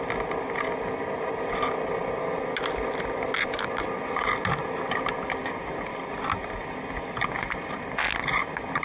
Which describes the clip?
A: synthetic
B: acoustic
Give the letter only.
B